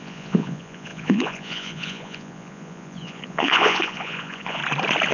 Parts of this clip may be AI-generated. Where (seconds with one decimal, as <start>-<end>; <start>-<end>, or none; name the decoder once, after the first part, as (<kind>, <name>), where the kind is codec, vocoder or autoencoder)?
0.0-4.6 (vocoder, Vocos)